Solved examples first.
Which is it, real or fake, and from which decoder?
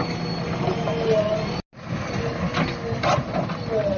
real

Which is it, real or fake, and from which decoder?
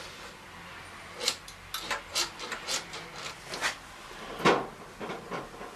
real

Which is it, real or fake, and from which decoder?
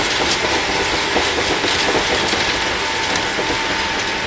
real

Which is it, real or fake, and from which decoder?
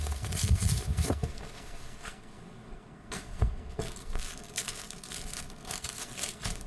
fake, codec, SNAC